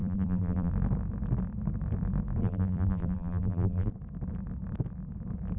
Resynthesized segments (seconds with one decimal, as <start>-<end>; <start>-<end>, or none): 0.0-0.7; 2.4-3.9